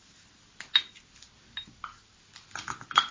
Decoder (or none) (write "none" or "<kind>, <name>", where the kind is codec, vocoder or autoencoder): none